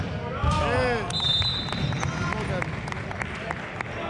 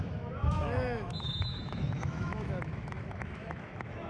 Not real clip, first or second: second